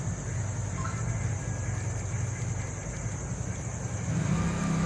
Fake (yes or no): no